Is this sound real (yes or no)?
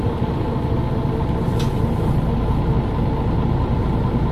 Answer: yes